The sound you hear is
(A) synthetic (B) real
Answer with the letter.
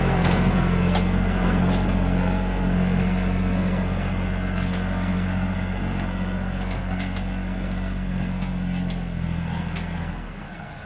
A